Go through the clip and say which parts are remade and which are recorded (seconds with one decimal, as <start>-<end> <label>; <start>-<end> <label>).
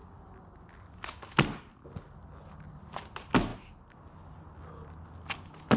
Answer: 0.0-5.8 recorded